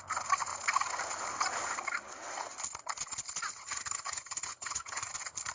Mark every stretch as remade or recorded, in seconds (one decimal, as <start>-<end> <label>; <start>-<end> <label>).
0.0-3.5 recorded; 3.5-5.1 remade; 5.1-5.5 recorded